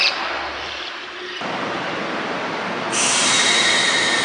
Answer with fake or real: fake